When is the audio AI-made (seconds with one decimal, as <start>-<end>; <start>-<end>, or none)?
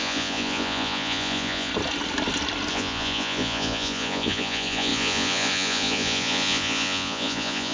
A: 0.0-1.7; 2.7-7.7